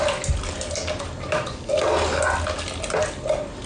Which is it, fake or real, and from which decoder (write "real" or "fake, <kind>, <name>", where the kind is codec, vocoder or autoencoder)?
real